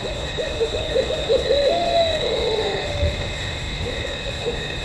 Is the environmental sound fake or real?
fake